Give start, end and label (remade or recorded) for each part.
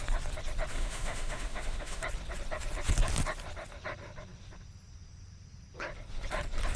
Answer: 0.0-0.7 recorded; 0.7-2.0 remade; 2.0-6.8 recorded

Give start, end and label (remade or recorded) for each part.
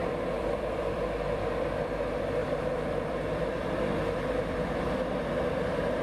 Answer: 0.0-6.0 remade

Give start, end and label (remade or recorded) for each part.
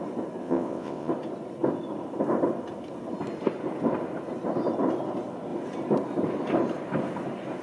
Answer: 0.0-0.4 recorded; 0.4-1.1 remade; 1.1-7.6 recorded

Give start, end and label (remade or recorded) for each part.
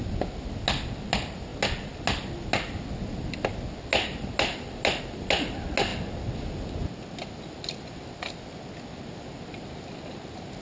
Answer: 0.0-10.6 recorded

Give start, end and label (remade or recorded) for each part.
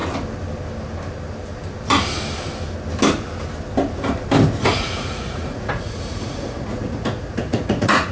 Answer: 0.0-4.6 recorded; 4.6-8.1 remade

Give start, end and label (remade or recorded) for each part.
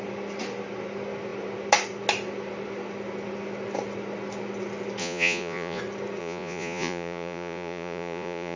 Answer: 0.0-5.0 recorded; 5.0-5.8 remade; 5.8-6.2 recorded; 6.2-8.6 remade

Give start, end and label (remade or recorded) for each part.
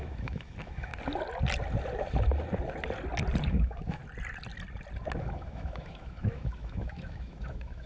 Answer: 0.0-0.9 remade; 0.9-3.5 recorded; 3.5-4.0 remade; 4.0-5.2 recorded; 5.2-7.9 remade